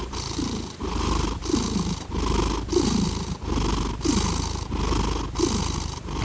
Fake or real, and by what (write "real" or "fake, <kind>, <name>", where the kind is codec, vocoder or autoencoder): real